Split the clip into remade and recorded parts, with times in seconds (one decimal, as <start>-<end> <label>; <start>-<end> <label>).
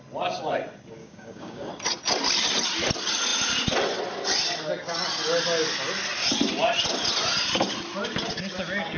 0.0-1.0 recorded; 1.0-1.7 remade; 1.7-9.0 recorded